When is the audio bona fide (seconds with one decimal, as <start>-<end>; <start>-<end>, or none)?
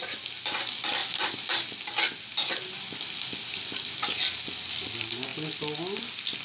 0.0-6.4